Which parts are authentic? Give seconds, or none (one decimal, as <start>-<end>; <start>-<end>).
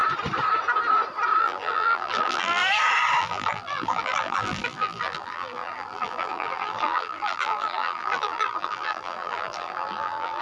0.0-1.4; 2.6-3.2